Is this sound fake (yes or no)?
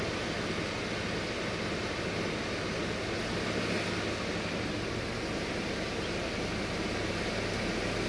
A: no